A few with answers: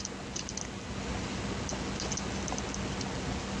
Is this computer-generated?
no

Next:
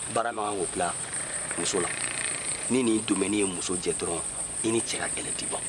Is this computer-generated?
yes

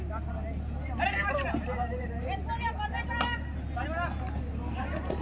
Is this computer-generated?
no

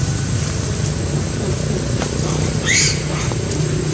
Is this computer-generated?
no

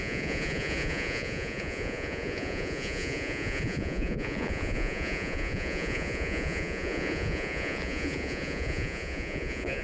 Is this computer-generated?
yes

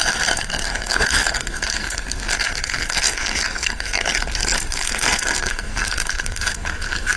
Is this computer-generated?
yes